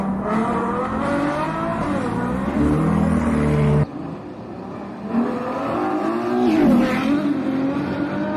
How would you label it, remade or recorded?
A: recorded